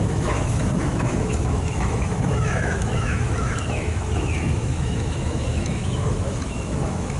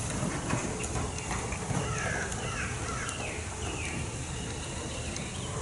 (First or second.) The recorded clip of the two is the second